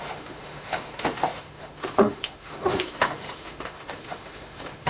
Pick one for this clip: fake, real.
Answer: fake